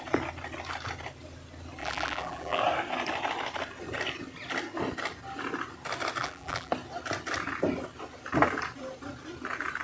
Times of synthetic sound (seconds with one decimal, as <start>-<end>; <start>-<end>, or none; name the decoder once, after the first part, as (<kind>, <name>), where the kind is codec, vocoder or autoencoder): 1.8-2.6 (vocoder, BigVGAN v2); 6.2-6.7